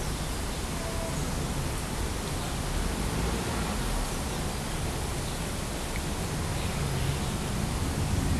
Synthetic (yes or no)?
no